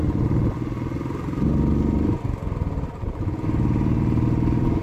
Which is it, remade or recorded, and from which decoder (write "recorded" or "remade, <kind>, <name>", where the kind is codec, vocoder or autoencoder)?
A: recorded